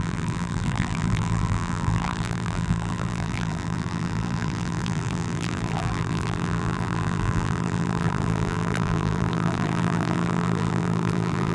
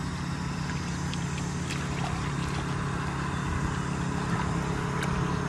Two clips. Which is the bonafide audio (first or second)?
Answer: second